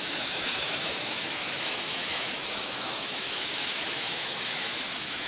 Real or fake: fake